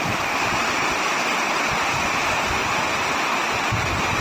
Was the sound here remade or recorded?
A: recorded